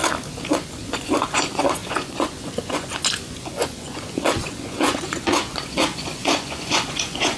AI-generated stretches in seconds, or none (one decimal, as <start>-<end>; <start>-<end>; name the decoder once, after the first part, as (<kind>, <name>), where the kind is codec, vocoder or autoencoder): 0.5-7.4 (vocoder, Vocos)